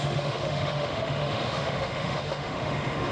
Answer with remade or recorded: remade